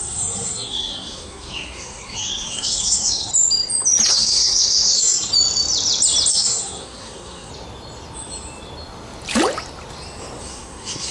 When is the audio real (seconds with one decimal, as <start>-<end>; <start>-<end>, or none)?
3.3-4.1; 5.3-6.3; 7.5-10.4